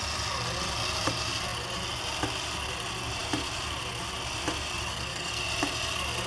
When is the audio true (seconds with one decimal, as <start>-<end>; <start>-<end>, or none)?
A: 0.0-4.9; 5.4-6.3